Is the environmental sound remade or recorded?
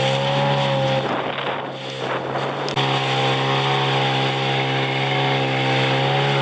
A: recorded